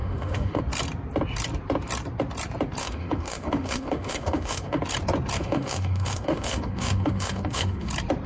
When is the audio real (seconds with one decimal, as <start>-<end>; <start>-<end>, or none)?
0.6-2.8; 4.8-5.4; 7.9-8.3